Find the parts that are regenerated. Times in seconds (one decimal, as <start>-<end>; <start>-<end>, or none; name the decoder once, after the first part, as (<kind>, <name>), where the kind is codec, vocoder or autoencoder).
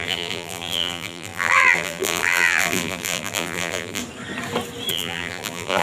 0.0-4.0 (vocoder, BigVGAN v2); 4.9-5.8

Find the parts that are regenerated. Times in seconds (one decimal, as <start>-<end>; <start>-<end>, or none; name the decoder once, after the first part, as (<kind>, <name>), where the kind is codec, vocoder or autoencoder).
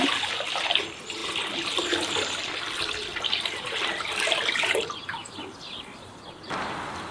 0.0-7.1 (vocoder, BigVGAN v2)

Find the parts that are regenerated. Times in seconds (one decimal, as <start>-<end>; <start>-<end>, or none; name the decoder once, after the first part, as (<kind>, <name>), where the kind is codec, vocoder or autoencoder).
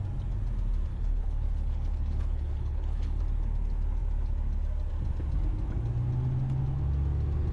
0.9-3.2 (codec, HILCodec)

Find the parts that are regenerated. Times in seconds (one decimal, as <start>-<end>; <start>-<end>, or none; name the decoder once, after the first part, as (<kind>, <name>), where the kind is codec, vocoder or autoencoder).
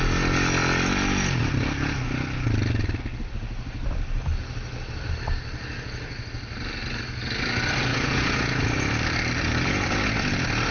7.9-8.6 (vocoder, Vocos)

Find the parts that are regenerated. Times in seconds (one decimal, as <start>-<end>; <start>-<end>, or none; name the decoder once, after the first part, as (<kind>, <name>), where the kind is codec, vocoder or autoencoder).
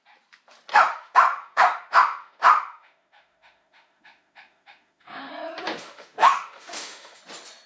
0.7-5.3 (autoencoder, DAC-VAE); 5.7-7.2